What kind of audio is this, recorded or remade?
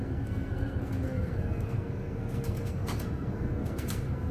remade